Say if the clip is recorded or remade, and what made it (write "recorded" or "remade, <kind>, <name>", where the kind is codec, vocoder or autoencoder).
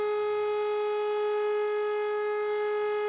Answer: recorded